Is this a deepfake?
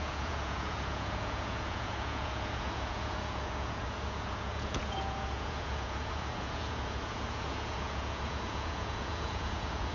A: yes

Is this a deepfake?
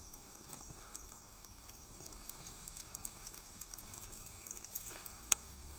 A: yes